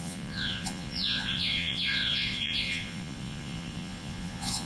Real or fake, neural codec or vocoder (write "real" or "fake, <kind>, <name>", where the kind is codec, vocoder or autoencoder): fake, vocoder, Vocos